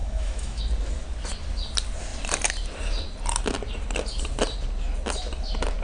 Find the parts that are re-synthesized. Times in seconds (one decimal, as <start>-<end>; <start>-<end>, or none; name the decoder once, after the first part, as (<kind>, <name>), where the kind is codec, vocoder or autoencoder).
0.0-0.6 (autoencoder, DAC-VAE)